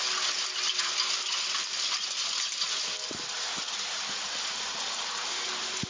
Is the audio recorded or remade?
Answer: recorded